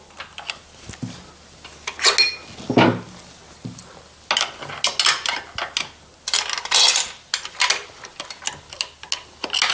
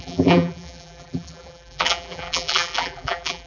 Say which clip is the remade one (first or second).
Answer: second